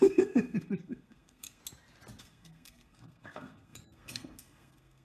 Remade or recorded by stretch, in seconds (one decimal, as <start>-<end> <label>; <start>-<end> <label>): 0.0-1.6 remade; 1.6-2.2 recorded; 2.2-5.0 remade